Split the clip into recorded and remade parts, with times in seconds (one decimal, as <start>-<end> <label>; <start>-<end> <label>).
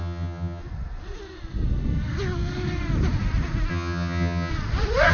0.0-0.6 remade; 0.6-3.7 recorded; 3.7-4.5 remade; 4.5-5.1 recorded